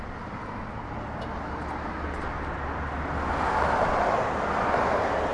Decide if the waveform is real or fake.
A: real